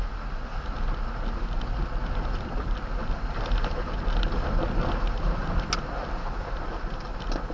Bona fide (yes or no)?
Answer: yes